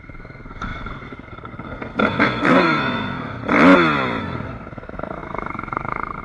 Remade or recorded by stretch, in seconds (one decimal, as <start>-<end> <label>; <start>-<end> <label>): 0.0-3.4 remade; 3.4-4.2 recorded; 4.2-6.2 remade